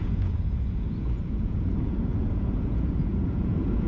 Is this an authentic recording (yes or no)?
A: no